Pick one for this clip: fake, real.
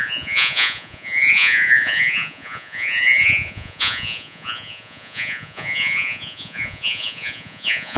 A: fake